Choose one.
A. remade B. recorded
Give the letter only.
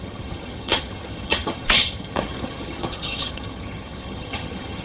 A